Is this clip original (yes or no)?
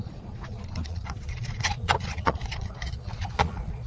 no